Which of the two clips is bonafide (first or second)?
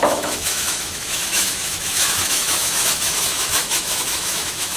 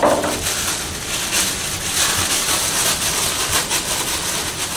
second